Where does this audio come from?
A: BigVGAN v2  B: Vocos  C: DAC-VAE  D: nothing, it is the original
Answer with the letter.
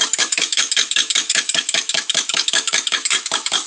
C